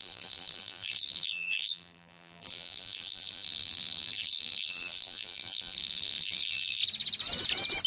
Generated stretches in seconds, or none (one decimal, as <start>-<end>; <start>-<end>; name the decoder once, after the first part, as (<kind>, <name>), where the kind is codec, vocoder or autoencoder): 0.0-6.8 (vocoder, BigVGAN v2)